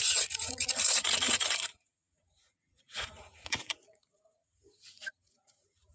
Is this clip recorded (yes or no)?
no